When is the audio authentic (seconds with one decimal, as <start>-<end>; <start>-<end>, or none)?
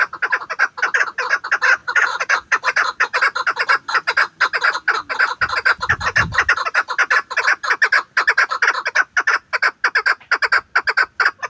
0.0-1.8; 3.2-11.5